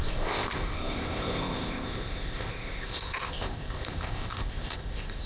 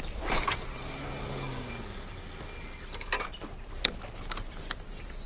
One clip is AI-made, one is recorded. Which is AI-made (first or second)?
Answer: first